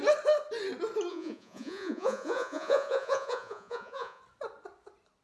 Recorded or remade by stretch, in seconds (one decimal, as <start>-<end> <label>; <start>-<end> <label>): 0.0-1.1 recorded; 1.1-4.2 remade; 4.2-5.2 recorded